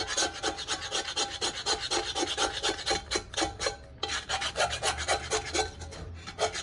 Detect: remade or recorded recorded